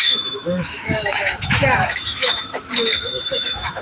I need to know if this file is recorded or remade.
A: remade